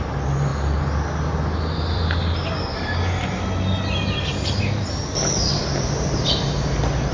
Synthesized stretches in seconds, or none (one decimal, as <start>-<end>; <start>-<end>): 0.0-5.6; 6.4-7.1